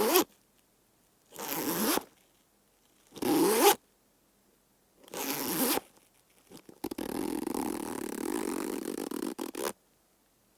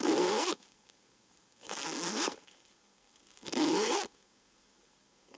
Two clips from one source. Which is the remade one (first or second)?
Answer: second